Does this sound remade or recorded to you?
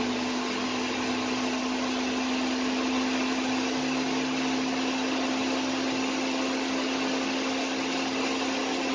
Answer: recorded